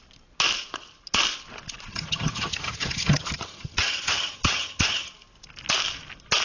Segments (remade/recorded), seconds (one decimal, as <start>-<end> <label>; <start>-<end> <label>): 0.0-1.9 recorded; 1.9-5.1 remade; 5.1-6.4 recorded

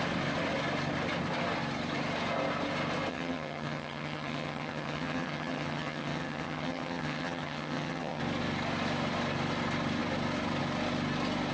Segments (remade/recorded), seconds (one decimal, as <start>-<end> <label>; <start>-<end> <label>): 0.0-3.1 recorded; 3.1-8.2 remade; 8.2-11.5 recorded

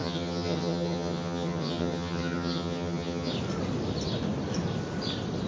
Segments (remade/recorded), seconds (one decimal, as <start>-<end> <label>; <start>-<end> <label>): 0.0-3.3 remade; 3.3-5.5 recorded

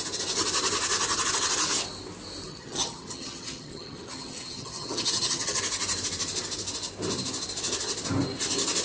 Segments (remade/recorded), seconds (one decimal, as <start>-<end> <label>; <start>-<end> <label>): 0.0-2.5 recorded; 2.5-5.6 remade; 5.6-8.8 recorded

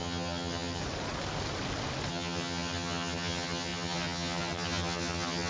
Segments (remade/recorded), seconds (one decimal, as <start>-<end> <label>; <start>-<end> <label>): 0.0-0.8 remade; 0.8-2.1 recorded; 2.1-5.5 remade

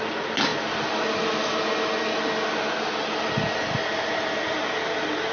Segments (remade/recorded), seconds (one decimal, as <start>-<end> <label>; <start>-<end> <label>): 0.0-5.3 recorded

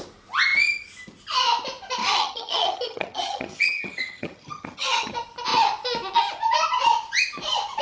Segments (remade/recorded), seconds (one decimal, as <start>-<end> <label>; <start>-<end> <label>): 0.0-2.0 recorded; 2.0-5.1 remade; 5.1-7.8 recorded